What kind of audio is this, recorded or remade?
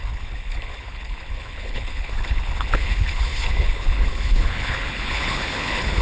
remade